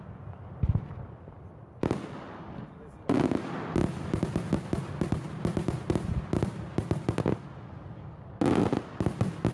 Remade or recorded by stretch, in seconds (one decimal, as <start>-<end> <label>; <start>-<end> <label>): 0.0-9.5 recorded

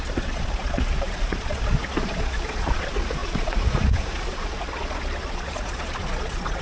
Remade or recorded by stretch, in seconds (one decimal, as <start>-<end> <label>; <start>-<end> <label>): 0.0-6.6 remade

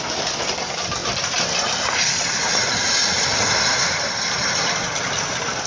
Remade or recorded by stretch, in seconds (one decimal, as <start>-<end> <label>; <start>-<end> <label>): 0.0-5.7 recorded